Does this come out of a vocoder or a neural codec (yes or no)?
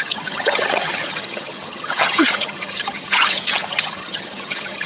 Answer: yes